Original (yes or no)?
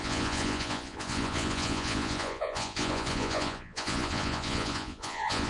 no